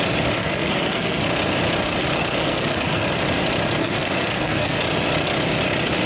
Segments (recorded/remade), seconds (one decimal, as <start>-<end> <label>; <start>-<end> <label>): 0.0-0.4 recorded; 0.4-1.2 remade; 1.2-2.2 recorded; 2.2-3.1 remade; 3.1-3.8 recorded; 3.8-4.8 remade; 4.8-6.1 recorded